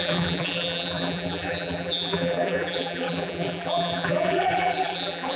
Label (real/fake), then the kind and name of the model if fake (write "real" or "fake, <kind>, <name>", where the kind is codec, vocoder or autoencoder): fake, vocoder, BigVGAN v2